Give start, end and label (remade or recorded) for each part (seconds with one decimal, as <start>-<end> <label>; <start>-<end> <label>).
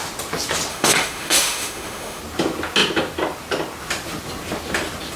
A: 0.0-0.7 recorded; 0.7-2.2 remade; 2.2-5.2 recorded